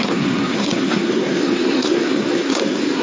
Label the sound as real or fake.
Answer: fake